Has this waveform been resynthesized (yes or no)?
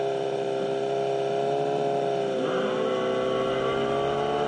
no